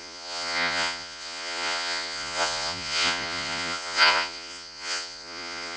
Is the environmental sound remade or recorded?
remade